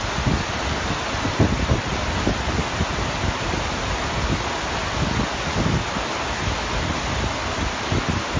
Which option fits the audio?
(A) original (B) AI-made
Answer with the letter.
A